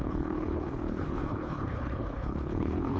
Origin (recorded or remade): remade